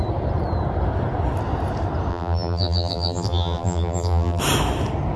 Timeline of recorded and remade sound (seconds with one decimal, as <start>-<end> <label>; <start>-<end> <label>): 0.0-2.1 recorded; 2.1-4.4 remade; 4.4-5.2 recorded